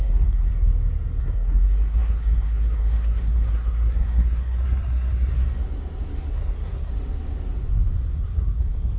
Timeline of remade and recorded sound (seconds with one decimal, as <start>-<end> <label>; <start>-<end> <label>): 0.0-0.5 remade; 0.5-1.2 recorded; 1.2-5.3 remade; 5.3-6.3 recorded; 6.3-6.9 remade; 6.9-8.1 recorded; 8.1-9.0 remade

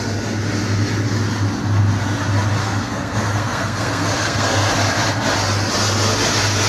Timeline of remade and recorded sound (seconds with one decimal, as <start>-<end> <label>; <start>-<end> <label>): 0.0-2.6 recorded; 2.6-4.7 remade; 4.7-6.7 recorded

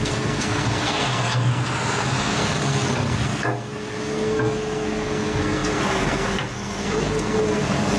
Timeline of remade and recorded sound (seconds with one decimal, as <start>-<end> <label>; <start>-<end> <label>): 0.0-8.0 remade

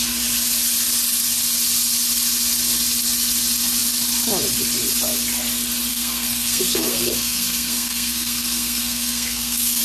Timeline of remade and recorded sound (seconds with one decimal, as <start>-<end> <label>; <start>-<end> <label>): 0.0-5.9 recorded; 5.9-9.8 remade